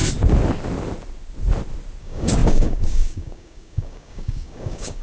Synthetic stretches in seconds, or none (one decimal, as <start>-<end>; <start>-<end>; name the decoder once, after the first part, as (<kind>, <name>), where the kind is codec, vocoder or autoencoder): 2.0-5.0 (codec, DAC)

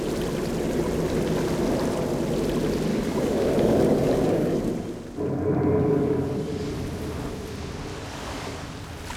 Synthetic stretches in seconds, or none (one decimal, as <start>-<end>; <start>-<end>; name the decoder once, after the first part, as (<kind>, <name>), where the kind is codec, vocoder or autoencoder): 2.9-4.7 (codec, DAC); 5.8-6.8; 7.9-8.7

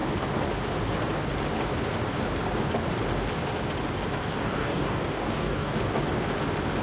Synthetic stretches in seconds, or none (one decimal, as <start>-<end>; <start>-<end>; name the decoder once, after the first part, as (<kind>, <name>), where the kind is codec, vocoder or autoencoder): 4.3-5.8 (codec, DAC)